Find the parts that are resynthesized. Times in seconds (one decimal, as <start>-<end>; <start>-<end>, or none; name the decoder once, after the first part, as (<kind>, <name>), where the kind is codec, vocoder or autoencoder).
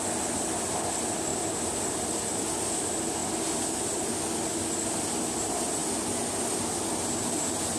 1.3-2.2 (vocoder, BigVGAN v2); 3.2-5.2; 5.8-7.8